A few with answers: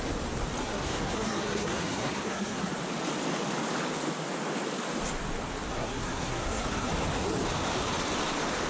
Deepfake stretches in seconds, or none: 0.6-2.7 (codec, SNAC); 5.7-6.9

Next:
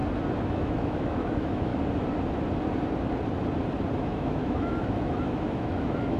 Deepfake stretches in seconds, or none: 0.5-1.7 (autoencoder, DAC-VAE); 4.0-6.2

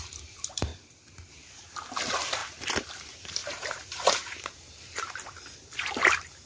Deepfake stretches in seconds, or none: 0.0-0.7 (vocoder, BigVGAN v2); 1.3-2.4; 2.9-6.5

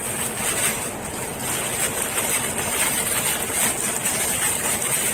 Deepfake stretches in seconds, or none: 0.0-3.3 (vocoder, BigVGAN v2); 4.5-5.1

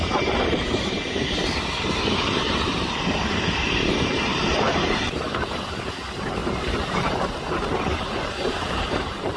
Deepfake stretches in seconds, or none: 0.0-9.4 (vocoder, BigVGAN v2)

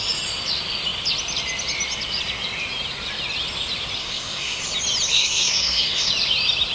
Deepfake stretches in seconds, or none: 4.0-4.6 (codec, SNAC); 5.1-6.1

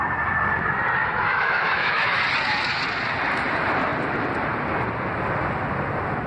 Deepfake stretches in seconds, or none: 1.0-2.2 (autoencoder, DAC-VAE)